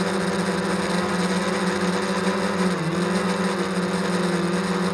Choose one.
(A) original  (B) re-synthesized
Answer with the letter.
A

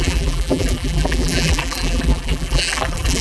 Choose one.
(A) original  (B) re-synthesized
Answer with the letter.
B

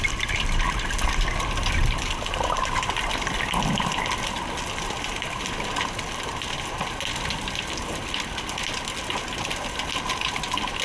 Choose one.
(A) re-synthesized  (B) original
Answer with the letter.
B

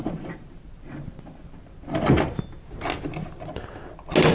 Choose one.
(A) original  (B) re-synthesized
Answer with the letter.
A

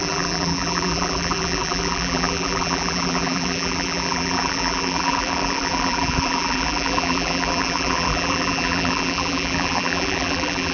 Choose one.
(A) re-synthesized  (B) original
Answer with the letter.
A